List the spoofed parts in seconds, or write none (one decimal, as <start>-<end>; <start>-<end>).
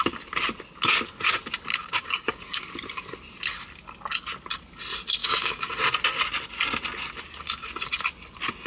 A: 1.7-2.6; 5.2-5.7